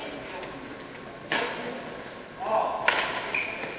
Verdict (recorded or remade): recorded